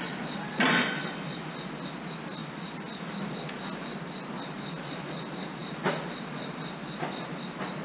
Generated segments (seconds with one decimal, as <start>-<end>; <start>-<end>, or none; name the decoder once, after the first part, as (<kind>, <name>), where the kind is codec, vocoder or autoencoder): 2.4-3.2 (vocoder, BigVGAN v2)